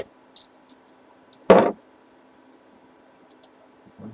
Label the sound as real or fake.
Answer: real